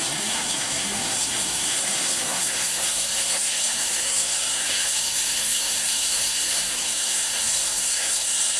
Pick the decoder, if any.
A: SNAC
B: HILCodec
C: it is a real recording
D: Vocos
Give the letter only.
A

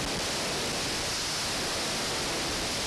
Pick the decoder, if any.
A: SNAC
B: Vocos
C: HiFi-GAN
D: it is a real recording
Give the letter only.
D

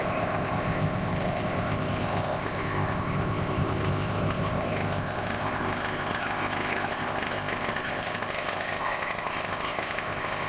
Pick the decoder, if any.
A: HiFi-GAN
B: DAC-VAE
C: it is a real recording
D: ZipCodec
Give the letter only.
D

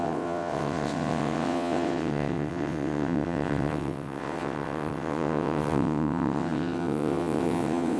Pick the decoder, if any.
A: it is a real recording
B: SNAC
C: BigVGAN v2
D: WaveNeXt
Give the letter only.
D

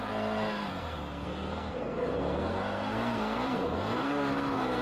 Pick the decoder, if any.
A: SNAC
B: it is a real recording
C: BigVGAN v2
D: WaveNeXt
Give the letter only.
A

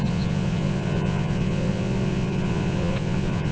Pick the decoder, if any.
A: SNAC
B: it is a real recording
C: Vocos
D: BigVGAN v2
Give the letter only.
C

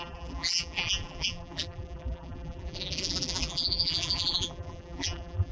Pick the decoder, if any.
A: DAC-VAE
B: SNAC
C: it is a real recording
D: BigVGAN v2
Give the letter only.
D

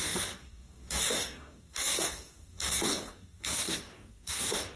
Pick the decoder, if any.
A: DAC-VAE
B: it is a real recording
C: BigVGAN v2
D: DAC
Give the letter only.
D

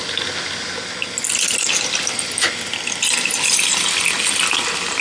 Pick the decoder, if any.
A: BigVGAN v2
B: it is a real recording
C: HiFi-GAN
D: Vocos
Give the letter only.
B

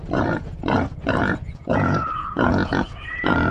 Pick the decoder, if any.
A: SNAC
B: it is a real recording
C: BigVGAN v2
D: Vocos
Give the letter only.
D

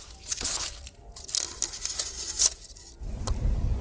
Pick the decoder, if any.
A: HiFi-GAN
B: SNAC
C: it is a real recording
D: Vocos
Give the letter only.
C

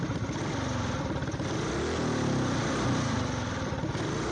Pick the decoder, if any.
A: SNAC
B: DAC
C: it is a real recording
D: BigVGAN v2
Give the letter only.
C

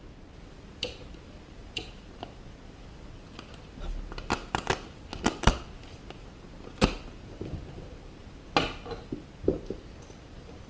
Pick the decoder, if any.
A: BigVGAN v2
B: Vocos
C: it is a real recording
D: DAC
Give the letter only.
C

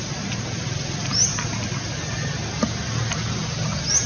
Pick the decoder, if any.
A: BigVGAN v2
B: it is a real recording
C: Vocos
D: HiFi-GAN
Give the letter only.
B